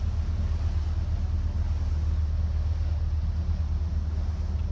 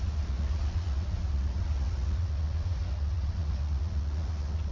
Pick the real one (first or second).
first